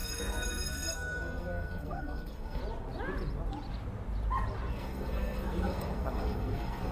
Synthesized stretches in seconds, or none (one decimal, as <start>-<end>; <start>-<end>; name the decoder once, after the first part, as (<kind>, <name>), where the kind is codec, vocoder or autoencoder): 0.0-2.6 (codec, SNAC); 4.7-6.9